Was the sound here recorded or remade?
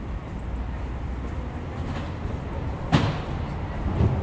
recorded